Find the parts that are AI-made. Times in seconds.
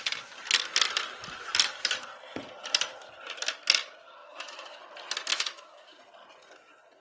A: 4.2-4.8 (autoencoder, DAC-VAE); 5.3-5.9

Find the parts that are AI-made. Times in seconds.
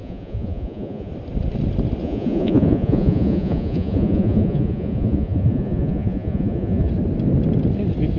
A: 0.0-1.1 (vocoder, Vocos); 2.0-6.9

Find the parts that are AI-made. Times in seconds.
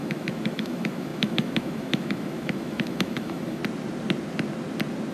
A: 0.0-3.6 (autoencoder, DAC-VAE)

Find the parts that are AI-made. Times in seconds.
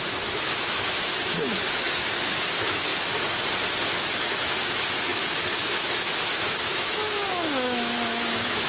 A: 0.0-1.1 (autoencoder, DAC-VAE); 1.7-2.9; 3.9-8.7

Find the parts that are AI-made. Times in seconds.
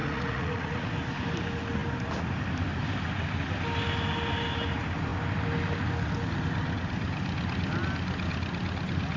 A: 0.0-0.9 (vocoder, Vocos)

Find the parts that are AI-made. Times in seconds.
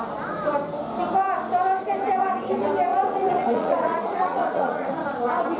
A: 2.9-4.9 (vocoder, Vocos)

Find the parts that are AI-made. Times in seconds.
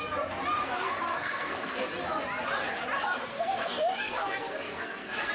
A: 0.6-1.9 (codec, SNAC); 3.3-5.3